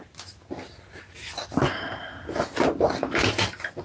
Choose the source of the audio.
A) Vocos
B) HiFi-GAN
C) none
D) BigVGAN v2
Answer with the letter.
C